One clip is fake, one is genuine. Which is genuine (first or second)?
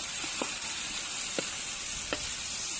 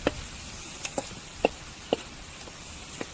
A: second